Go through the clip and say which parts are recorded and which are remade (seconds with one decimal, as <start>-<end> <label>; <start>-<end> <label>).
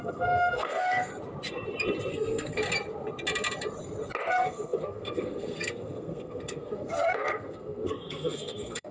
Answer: 0.0-1.1 remade; 1.1-2.1 recorded; 2.1-2.6 remade; 2.6-4.3 recorded; 4.3-8.9 remade